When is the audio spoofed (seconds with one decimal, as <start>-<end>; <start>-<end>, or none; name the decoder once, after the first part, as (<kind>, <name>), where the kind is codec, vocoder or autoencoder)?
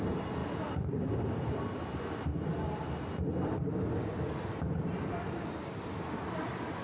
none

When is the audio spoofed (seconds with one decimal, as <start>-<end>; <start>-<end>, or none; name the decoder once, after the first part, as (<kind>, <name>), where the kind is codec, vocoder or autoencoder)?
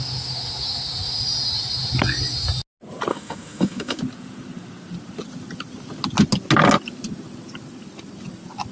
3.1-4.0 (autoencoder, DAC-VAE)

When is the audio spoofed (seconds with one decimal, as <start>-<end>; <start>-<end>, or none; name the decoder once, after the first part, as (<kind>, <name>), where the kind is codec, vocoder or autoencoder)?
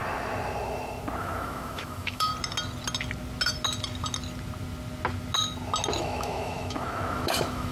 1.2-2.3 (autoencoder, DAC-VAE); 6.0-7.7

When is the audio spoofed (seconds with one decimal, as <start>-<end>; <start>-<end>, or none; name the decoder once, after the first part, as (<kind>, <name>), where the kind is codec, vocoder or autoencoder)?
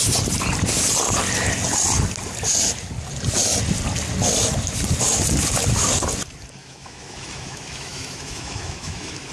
6.6-9.3 (autoencoder, DAC-VAE)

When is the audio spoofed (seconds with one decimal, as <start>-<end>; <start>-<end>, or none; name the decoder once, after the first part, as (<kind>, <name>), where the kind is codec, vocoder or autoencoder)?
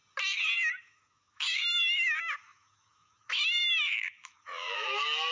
0.8-5.3 (autoencoder, DAC-VAE)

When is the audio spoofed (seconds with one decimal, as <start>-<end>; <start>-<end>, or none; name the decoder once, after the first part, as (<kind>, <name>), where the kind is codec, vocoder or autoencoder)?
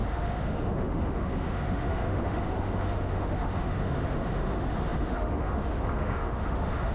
0.0-6.9 (autoencoder, DAC-VAE)